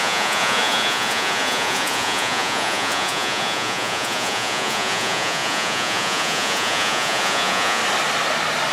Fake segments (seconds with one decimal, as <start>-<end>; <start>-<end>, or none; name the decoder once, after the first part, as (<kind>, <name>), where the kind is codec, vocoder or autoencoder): 0.0-7.8 (vocoder, Vocos)